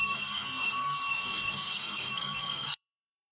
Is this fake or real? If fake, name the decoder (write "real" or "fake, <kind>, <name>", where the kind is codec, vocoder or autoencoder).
fake, codec, SNAC